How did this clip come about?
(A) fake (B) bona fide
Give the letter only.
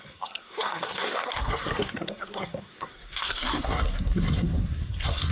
A